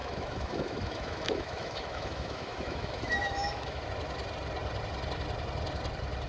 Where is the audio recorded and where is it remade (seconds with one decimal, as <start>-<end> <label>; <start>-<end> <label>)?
0.0-3.8 remade; 3.8-6.3 recorded